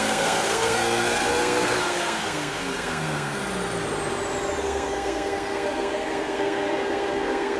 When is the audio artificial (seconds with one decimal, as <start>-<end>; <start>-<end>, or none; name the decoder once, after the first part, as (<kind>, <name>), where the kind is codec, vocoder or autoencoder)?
0.0-3.4 (codec, SNAC); 4.6-7.6